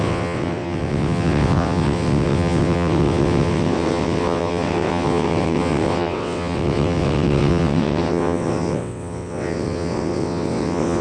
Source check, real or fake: fake